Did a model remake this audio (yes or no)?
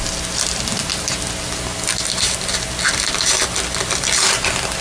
no